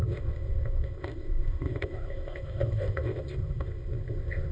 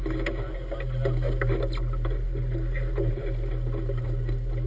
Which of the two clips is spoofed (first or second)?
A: first